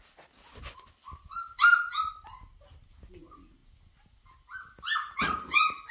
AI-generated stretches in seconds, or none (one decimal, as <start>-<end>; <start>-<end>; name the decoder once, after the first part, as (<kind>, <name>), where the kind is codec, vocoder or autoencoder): none